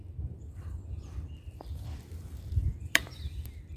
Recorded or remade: remade